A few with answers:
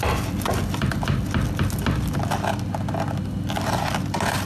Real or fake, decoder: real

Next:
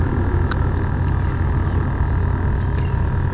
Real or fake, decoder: real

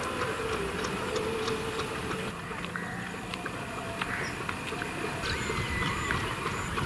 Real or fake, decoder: real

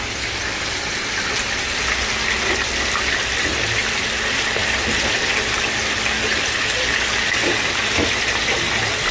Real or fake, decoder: real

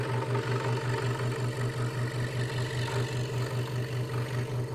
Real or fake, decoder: real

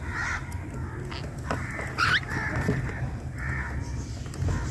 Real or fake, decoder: real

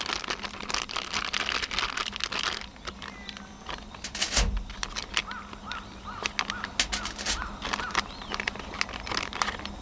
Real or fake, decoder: real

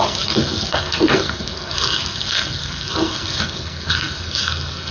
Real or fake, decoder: fake, codec, SNAC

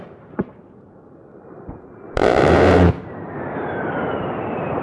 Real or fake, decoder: fake, vocoder, BigVGAN v2